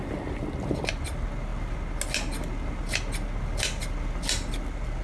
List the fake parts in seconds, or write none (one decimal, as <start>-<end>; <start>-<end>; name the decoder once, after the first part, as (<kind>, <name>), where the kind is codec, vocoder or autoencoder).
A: none